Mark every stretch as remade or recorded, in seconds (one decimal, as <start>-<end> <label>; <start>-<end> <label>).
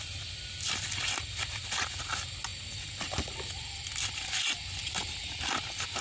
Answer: 0.0-2.5 recorded; 2.5-3.7 remade; 3.7-4.8 recorded; 4.8-5.5 remade; 5.5-6.0 recorded